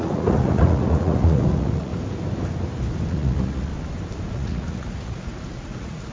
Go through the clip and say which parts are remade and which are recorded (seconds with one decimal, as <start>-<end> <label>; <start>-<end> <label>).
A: 0.0-1.9 remade; 1.9-3.1 recorded; 3.1-3.7 remade; 3.7-4.3 recorded; 4.3-6.1 remade